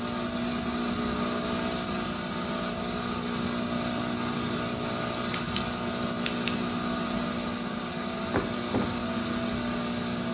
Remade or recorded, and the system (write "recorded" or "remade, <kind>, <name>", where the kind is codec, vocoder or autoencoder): recorded